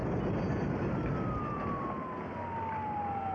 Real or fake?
real